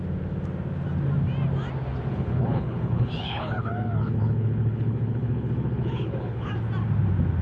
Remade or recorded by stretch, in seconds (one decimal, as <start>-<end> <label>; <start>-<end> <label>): 0.0-2.1 recorded; 2.1-6.5 remade; 6.5-7.4 recorded